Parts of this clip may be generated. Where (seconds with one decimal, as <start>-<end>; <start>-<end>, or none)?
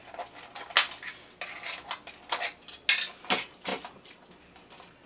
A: none